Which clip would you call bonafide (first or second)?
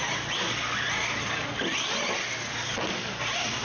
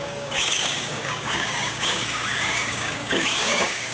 first